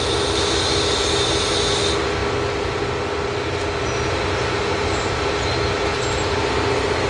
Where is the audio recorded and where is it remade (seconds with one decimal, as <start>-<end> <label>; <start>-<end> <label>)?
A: 0.0-7.1 recorded